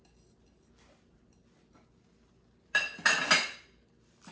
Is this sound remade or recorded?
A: recorded